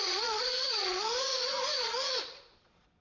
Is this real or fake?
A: fake